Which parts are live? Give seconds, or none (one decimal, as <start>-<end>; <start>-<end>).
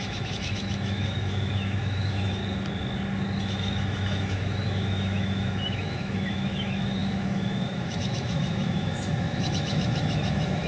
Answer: 2.4-3.4